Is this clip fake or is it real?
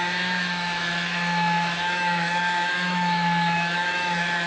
fake